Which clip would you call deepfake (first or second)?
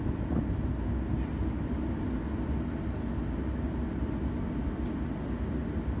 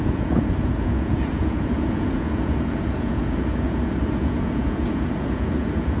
second